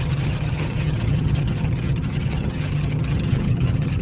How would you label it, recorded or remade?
remade